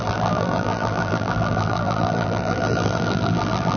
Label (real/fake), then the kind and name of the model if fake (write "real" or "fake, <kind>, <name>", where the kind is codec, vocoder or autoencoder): fake, vocoder, BigVGAN v2